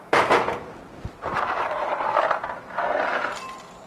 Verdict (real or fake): real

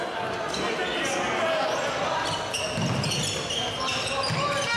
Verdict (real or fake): real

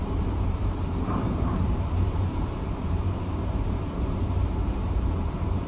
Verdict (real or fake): fake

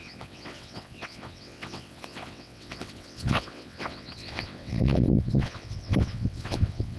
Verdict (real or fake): fake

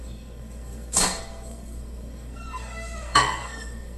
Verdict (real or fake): fake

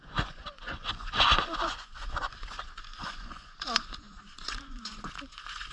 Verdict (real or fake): fake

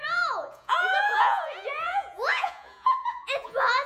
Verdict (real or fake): fake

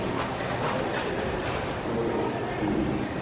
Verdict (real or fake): real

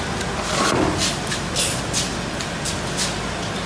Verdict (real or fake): real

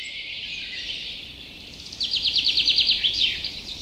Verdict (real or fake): fake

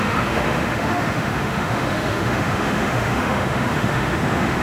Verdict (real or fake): fake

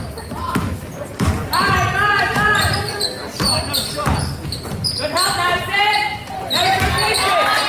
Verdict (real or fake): fake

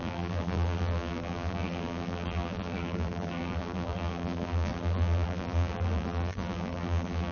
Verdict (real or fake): fake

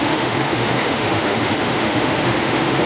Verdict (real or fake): fake